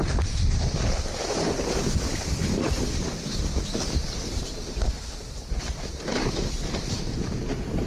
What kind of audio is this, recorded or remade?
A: recorded